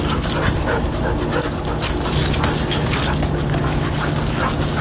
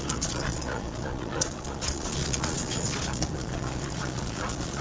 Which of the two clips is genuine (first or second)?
first